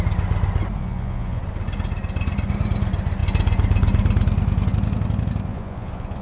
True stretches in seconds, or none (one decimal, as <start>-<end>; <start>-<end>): 0.0-0.8; 1.4-5.5